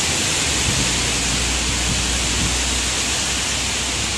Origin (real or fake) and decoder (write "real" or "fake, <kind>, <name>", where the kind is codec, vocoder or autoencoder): real